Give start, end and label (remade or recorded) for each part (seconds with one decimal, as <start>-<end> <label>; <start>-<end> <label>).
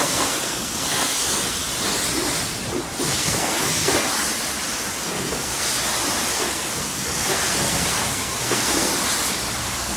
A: 0.0-1.6 remade; 1.6-3.1 recorded; 3.1-4.1 remade; 4.1-5.0 recorded; 5.0-5.7 remade; 5.7-6.3 recorded; 6.3-8.9 remade; 8.9-9.6 recorded; 9.6-10.0 remade